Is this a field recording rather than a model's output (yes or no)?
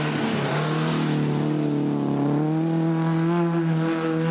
yes